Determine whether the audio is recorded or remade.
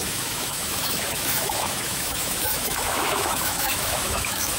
remade